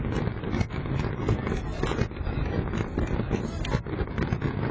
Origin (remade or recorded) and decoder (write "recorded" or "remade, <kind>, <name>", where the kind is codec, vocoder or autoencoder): recorded